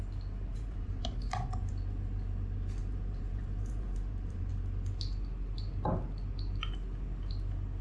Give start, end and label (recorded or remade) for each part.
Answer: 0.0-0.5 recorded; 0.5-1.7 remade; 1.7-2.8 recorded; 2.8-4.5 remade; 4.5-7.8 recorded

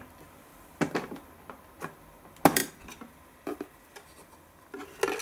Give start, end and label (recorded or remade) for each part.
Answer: 0.0-0.5 recorded; 0.5-1.3 remade; 1.3-5.2 recorded

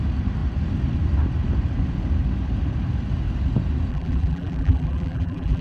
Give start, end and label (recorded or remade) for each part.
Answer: 0.0-3.9 recorded; 3.9-5.6 remade

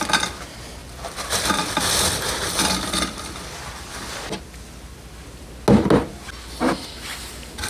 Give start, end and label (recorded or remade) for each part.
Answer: 0.0-0.8 recorded; 0.8-4.4 remade; 4.4-7.7 recorded

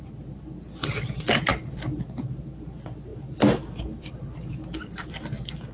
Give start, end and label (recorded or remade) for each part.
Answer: 0.0-1.5 recorded; 1.5-2.0 remade; 2.0-3.1 recorded; 3.1-4.5 remade; 4.5-5.7 recorded